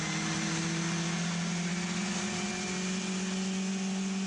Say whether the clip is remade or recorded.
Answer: recorded